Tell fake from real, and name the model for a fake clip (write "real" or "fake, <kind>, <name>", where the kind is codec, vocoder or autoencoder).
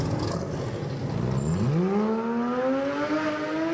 real